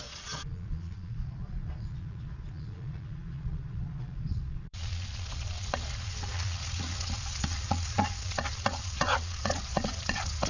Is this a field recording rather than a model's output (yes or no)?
no